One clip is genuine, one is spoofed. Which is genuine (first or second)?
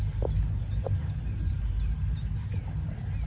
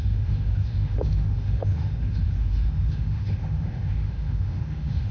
first